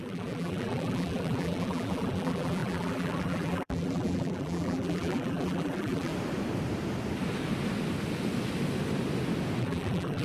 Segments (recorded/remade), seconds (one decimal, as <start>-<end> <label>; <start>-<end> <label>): 0.0-6.1 remade; 6.1-9.6 recorded; 9.6-10.2 remade